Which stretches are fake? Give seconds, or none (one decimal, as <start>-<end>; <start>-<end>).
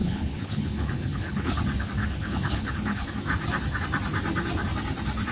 0.0-1.6; 2.0-3.1